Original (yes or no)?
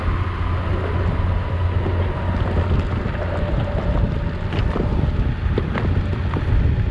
yes